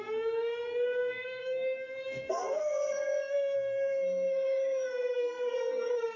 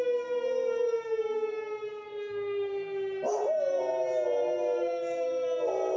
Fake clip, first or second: first